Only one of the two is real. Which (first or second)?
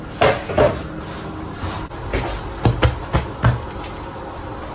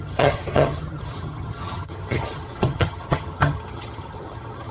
first